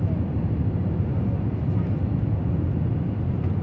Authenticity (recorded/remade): recorded